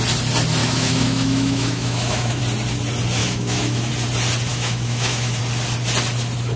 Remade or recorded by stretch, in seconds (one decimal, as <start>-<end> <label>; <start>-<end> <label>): 0.0-0.6 recorded; 0.6-2.4 remade; 2.4-3.2 recorded; 3.2-3.9 remade; 3.9-4.5 recorded; 4.5-5.4 remade; 5.4-6.6 recorded